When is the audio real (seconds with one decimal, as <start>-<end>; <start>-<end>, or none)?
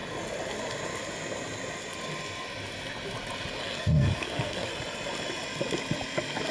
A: 0.0-3.6; 4.7-6.5